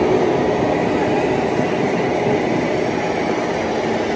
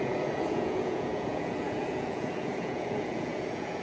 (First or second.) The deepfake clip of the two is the second